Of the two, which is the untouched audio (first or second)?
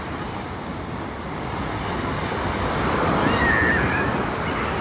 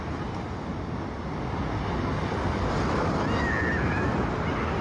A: second